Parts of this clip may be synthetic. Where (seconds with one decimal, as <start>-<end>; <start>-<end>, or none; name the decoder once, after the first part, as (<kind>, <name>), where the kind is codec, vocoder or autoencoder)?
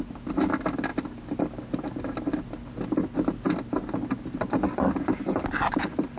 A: none